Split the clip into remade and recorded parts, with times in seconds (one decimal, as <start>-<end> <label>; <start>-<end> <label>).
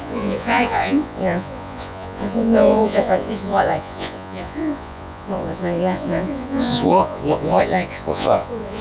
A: 0.0-8.8 remade